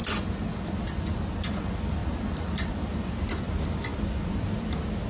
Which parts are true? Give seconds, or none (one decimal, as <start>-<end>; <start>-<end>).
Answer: 0.0-1.5; 2.0-2.7